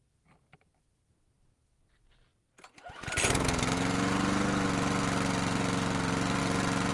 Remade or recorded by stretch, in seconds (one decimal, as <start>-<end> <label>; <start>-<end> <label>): 0.0-6.9 recorded